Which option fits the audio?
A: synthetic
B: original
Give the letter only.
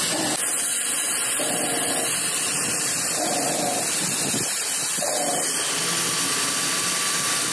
B